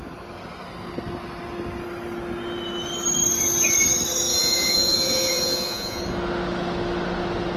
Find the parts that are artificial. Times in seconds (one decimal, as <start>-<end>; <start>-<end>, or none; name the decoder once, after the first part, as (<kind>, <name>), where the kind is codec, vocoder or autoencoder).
4.3-6.0 (vocoder, Vocos)